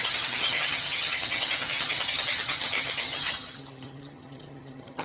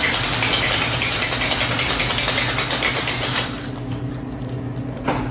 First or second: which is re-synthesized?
first